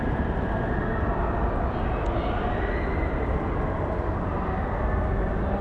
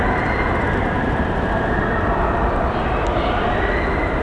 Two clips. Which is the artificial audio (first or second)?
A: second